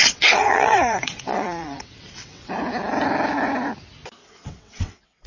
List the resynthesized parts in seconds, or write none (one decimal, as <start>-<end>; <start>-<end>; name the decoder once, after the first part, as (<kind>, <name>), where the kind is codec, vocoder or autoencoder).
0.0-2.5 (vocoder, WaveNeXt); 4.2-5.3